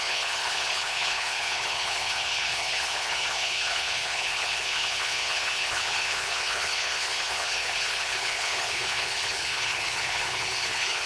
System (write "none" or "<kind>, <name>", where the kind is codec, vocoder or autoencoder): codec, HILCodec